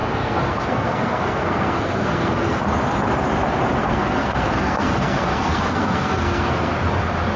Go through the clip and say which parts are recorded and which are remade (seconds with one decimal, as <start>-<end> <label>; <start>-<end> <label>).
0.0-2.6 remade; 2.6-3.8 recorded; 3.8-6.7 remade; 6.7-7.4 recorded